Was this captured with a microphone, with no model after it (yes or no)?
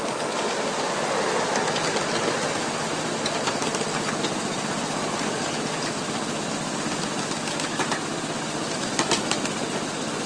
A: yes